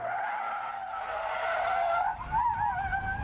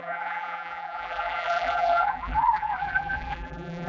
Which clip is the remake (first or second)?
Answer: second